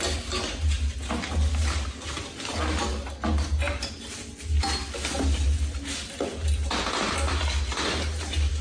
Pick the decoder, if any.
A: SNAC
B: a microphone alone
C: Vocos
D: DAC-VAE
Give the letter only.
B